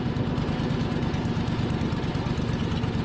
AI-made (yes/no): no